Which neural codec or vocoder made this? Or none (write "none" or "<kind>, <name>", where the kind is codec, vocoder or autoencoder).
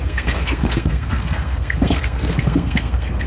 codec, SNAC